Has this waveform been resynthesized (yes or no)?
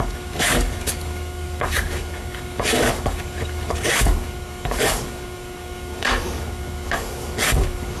yes